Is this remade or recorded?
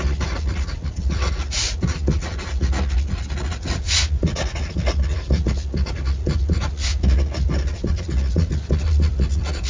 remade